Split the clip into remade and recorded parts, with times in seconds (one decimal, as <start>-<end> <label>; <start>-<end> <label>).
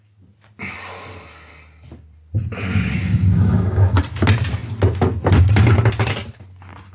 0.0-3.0 recorded; 3.0-4.0 remade; 4.0-6.9 recorded